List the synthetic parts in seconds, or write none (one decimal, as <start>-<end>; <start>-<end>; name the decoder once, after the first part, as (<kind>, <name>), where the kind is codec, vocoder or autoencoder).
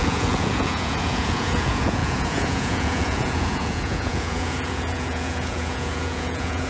0.0-6.7 (vocoder, Vocos)